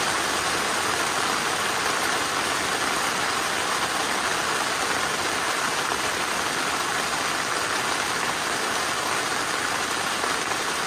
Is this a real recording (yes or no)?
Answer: yes